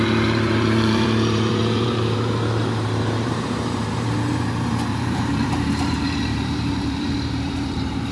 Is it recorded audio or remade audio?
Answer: remade